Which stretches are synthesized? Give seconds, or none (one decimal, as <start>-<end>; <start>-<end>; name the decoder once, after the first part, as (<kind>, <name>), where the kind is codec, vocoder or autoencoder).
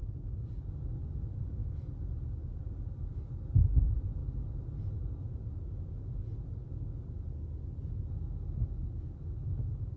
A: 0.0-0.7 (vocoder, Vocos)